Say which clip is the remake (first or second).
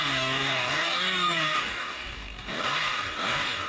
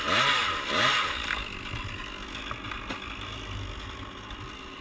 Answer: first